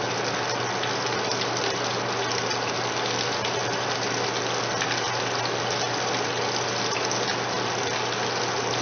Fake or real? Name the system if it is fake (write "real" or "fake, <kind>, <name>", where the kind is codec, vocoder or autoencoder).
real